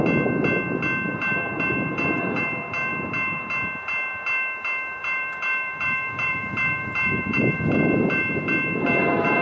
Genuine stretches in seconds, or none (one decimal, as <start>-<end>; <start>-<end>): 0.0-1.1; 2.4-5.0